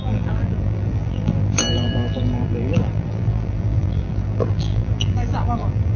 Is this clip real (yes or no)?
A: no